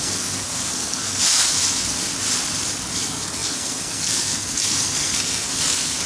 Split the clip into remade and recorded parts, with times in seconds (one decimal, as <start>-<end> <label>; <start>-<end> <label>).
0.0-2.1 remade; 2.1-2.9 recorded; 2.9-6.1 remade